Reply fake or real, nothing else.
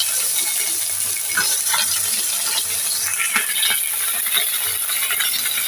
real